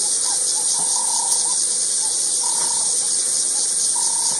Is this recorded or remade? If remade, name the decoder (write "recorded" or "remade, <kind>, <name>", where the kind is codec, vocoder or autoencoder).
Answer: recorded